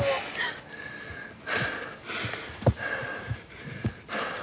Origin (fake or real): real